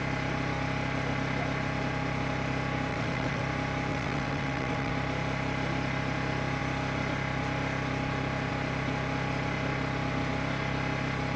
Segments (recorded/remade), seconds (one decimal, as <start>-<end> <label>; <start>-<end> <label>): 0.0-2.9 recorded; 2.9-3.4 remade; 3.4-3.9 recorded; 3.9-4.9 remade; 4.9-11.4 recorded